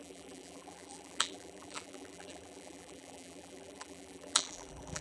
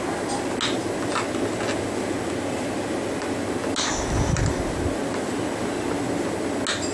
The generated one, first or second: first